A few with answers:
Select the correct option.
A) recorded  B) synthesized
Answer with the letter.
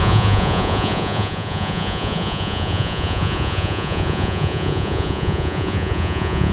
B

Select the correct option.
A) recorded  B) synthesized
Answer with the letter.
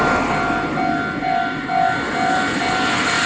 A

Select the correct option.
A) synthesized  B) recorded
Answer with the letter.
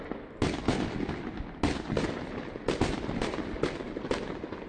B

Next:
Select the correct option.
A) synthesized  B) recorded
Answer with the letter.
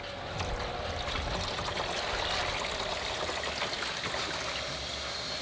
B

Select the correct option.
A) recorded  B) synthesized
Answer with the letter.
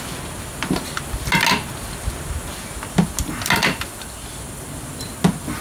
A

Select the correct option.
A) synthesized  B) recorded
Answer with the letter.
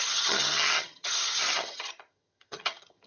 A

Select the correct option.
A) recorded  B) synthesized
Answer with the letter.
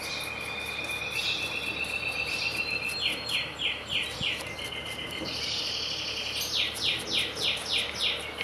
A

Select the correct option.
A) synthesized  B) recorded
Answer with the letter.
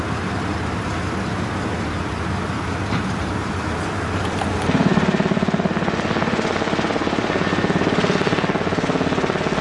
B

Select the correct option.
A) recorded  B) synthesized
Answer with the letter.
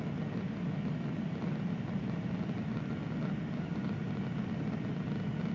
A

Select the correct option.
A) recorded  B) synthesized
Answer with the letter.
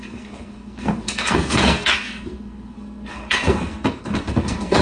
B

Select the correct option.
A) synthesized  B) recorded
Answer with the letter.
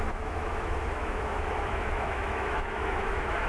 A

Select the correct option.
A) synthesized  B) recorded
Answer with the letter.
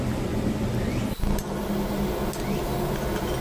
B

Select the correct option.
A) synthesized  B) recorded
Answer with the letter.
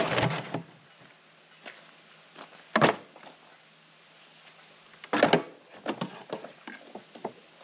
B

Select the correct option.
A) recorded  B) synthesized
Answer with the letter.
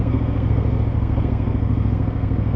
B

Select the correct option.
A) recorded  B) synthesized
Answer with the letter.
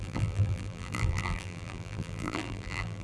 B